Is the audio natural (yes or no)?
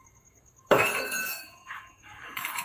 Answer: no